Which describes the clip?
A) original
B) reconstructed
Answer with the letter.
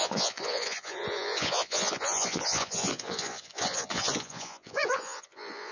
B